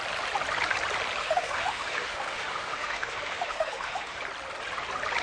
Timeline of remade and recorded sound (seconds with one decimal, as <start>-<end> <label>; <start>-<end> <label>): 0.0-1.2 recorded; 1.2-4.2 remade; 4.2-5.2 recorded